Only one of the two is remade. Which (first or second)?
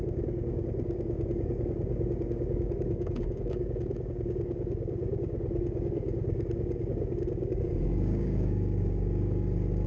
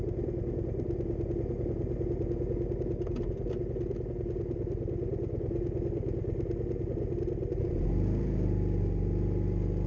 first